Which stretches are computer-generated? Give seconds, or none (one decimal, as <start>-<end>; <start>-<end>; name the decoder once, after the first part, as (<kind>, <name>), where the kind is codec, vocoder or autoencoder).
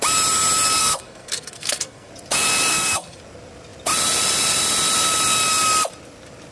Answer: 0.8-2.1 (codec, SNAC); 2.7-3.2